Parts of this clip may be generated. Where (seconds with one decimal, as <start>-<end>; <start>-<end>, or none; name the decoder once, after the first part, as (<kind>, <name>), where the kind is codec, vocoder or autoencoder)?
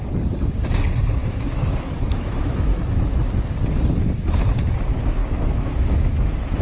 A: 1.2-2.9 (autoencoder, DAC-VAE); 5.2-6.6